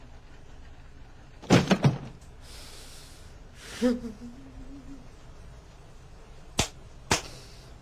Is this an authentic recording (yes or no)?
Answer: yes